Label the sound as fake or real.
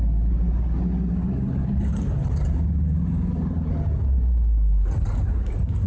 real